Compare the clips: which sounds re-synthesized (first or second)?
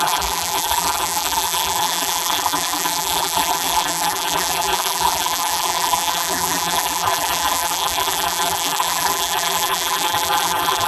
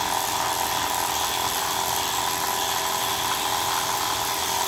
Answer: first